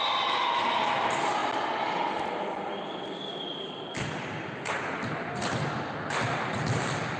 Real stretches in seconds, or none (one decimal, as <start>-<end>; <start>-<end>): 0.0-1.4; 5.7-7.2